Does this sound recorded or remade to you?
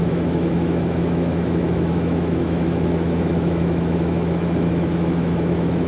remade